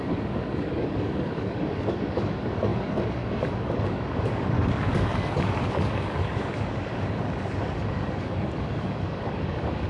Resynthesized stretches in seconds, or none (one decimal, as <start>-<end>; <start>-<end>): 0.0-9.9